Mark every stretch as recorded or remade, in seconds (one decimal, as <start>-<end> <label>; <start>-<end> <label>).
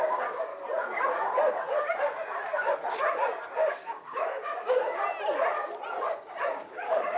0.0-0.5 remade; 0.5-3.7 recorded; 3.7-5.0 remade; 5.0-6.5 recorded; 6.5-7.2 remade